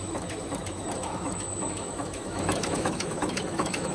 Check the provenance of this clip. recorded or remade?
remade